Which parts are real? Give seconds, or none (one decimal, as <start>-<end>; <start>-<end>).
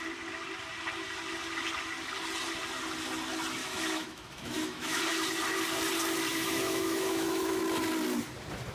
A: 0.0-3.6; 5.0-6.3; 7.6-8.7